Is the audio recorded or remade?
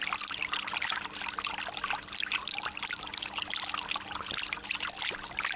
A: recorded